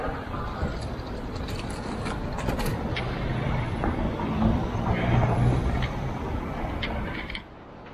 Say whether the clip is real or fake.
fake